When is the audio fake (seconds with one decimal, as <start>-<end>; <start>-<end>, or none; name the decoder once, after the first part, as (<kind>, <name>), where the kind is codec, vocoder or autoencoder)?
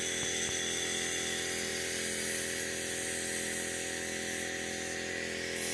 none